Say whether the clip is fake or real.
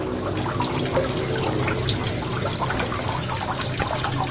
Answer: real